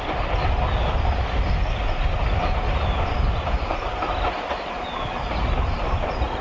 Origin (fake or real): real